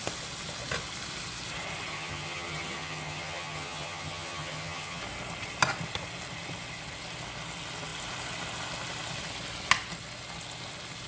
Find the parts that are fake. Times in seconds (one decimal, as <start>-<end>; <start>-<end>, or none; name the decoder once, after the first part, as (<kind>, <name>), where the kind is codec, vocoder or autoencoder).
1.9-5.0 (vocoder, HiFi-GAN)